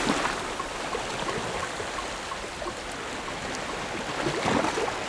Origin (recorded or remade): recorded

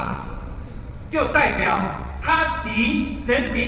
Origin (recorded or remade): remade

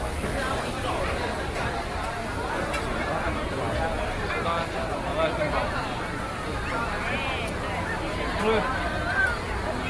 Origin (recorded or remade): recorded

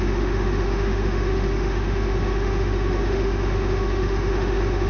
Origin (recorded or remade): remade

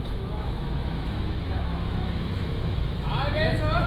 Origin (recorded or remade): remade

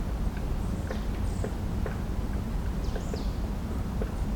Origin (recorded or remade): recorded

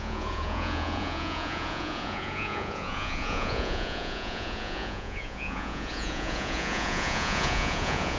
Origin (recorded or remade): remade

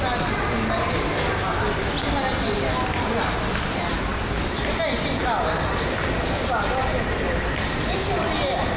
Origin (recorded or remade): recorded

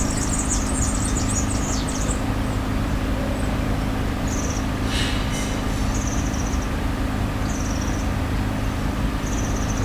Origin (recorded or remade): recorded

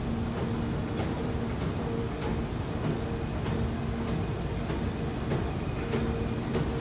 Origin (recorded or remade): recorded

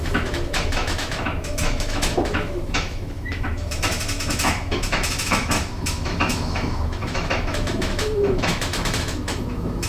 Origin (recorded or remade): remade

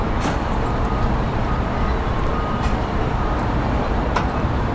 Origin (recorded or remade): remade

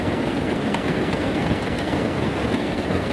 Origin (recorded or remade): remade